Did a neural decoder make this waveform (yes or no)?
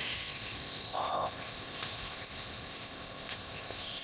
yes